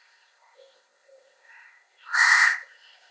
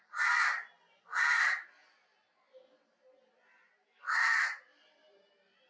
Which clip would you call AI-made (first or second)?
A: first